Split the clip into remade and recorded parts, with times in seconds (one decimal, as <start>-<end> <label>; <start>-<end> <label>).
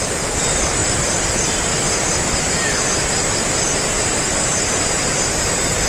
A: 0.0-5.9 remade